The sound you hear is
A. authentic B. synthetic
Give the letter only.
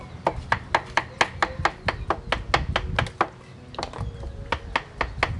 A